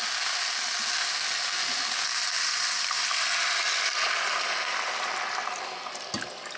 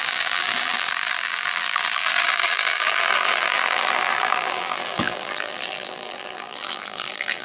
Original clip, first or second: first